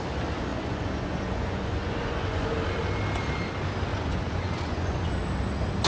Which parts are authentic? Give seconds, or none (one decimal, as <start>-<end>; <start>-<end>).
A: 0.0-0.5; 2.5-3.9; 5.1-5.9